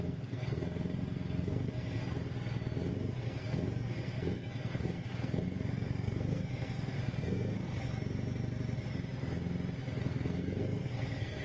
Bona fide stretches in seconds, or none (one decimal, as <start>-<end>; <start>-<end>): 2.0-2.9; 7.8-10.0